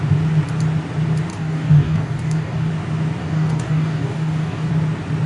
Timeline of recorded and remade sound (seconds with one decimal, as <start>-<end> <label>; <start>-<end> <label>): 0.0-1.3 recorded; 1.3-2.7 remade; 2.7-3.2 recorded; 3.2-4.7 remade; 4.7-5.3 recorded